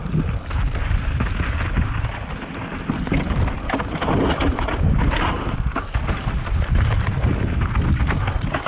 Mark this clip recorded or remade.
recorded